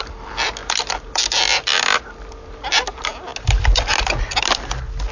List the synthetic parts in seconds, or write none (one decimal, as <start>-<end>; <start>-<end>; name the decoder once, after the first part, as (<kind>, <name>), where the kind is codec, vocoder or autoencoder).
none